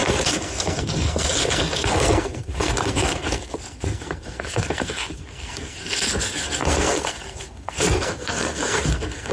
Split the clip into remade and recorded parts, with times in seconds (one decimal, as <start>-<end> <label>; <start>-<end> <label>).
0.0-9.3 remade